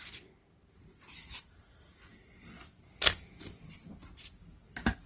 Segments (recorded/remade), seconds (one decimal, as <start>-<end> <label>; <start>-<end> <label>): 0.0-5.1 recorded